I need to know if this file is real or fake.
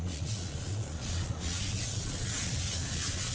fake